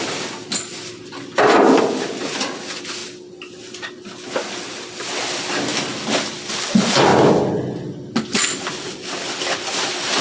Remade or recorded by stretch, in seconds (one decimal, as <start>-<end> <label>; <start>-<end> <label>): 0.0-10.2 recorded